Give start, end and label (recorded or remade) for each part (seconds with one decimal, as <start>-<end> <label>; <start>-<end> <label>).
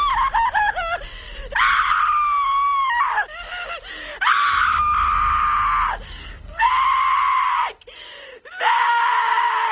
0.0-6.2 recorded; 6.2-6.7 remade; 6.7-9.7 recorded